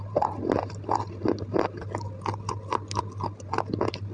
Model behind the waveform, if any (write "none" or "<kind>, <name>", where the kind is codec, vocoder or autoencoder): none